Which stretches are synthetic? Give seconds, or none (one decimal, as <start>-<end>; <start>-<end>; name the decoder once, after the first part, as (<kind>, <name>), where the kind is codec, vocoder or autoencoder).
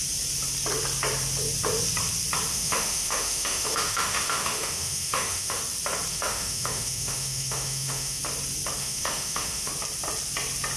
2.5-5.6 (autoencoder, DAC-VAE); 6.1-8.2; 8.8-9.7